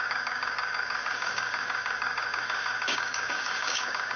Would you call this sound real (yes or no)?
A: no